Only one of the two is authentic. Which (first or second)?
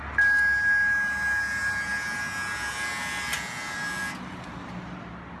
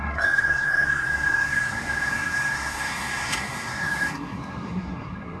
first